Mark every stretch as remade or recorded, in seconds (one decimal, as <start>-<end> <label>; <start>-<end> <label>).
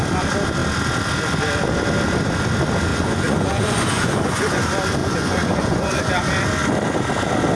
0.0-2.9 recorded; 2.9-4.6 remade; 4.6-5.0 recorded; 5.0-6.1 remade; 6.1-7.5 recorded